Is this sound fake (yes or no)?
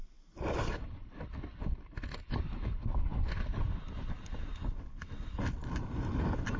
no